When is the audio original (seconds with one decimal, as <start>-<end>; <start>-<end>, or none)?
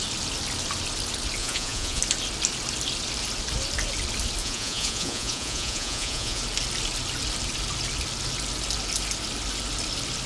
0.0-1.4; 2.0-4.4; 6.4-10.3